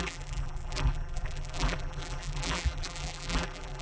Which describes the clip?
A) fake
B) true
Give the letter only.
A